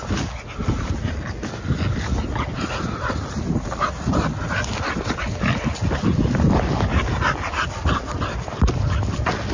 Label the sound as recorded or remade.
recorded